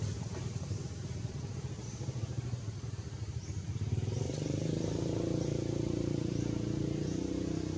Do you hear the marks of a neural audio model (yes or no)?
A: yes